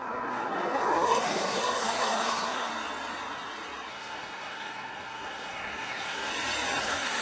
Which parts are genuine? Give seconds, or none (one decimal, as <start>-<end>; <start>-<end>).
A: 2.7-3.9; 6.3-6.8